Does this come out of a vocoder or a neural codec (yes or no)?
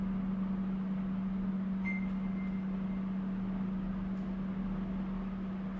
no